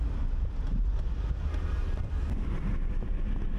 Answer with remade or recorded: recorded